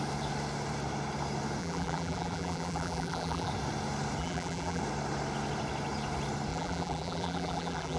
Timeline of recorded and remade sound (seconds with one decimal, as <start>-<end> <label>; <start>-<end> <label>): 0.0-1.6 recorded; 1.6-3.5 remade; 3.5-4.2 recorded; 4.2-4.8 remade; 4.8-6.5 recorded; 6.5-8.0 remade